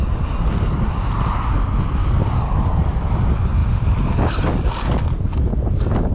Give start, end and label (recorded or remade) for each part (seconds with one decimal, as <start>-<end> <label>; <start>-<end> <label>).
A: 0.0-2.0 recorded; 2.0-2.8 remade; 2.8-6.1 recorded